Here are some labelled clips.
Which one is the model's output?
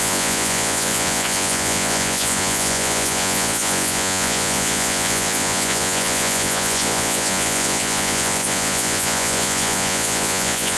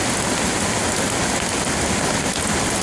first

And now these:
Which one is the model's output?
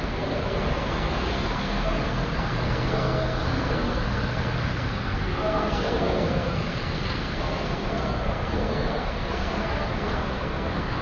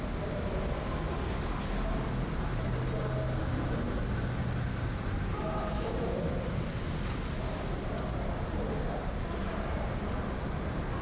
first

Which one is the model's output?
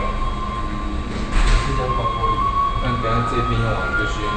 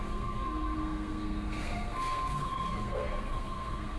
second